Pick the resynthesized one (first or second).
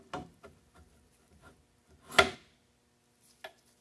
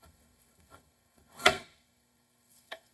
second